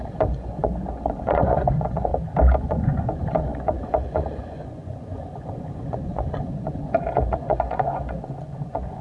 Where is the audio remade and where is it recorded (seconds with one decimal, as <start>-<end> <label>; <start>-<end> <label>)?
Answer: 0.0-2.1 remade; 2.1-2.6 recorded; 2.6-9.0 remade